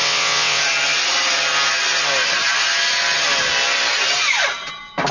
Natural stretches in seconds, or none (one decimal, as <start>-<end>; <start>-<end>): 0.6-5.1